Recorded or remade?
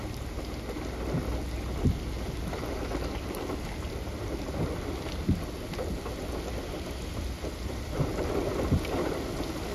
recorded